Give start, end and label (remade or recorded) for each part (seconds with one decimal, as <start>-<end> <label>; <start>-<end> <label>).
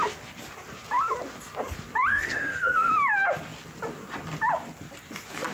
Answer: 0.0-2.1 recorded; 2.1-2.9 remade; 2.9-5.5 recorded